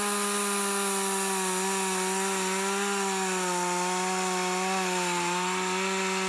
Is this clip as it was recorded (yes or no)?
yes